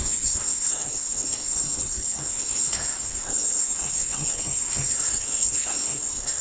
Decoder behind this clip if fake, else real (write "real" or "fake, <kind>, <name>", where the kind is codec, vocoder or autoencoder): fake, codec, SNAC